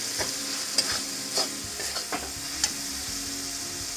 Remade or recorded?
recorded